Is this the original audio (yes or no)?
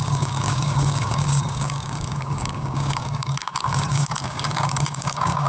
no